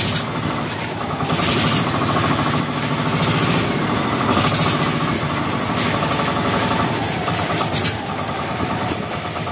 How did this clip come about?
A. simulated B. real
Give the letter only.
B